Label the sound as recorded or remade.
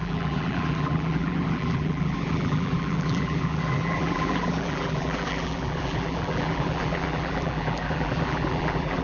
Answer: remade